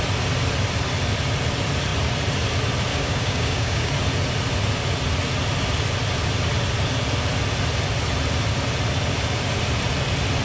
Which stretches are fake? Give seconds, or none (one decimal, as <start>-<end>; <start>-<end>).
2.9-3.9